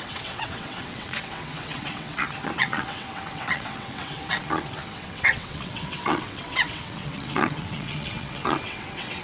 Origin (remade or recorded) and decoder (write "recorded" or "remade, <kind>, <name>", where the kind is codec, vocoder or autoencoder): remade, vocoder, WaveNeXt